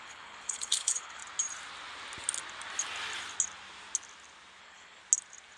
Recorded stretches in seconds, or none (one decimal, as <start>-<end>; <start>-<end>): 1.2-4.6; 5.0-5.6